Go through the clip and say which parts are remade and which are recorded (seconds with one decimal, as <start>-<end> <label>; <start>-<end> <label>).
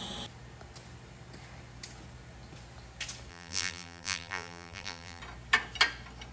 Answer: 0.0-3.3 recorded; 3.3-5.2 remade; 5.2-6.3 recorded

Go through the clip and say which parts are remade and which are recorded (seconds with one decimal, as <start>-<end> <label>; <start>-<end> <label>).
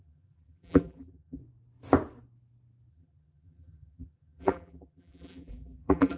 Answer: 0.0-1.4 remade; 1.4-2.9 recorded; 2.9-6.2 remade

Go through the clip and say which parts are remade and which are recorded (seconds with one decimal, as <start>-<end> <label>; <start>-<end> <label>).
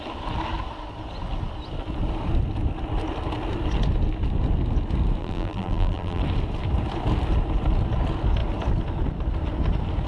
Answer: 0.0-5.2 recorded; 5.2-6.2 remade; 6.2-10.1 recorded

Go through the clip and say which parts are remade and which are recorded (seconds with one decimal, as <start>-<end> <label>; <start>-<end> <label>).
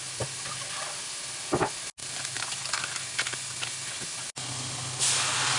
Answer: 0.0-5.6 recorded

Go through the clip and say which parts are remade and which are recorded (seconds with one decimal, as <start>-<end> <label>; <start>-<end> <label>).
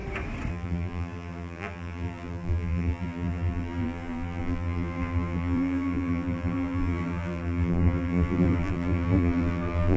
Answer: 0.0-0.5 recorded; 0.5-10.0 remade